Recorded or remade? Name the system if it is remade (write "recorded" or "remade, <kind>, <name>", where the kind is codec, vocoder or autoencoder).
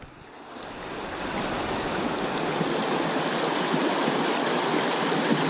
recorded